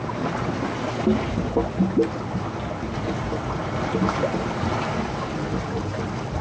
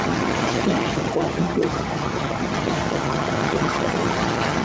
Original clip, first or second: first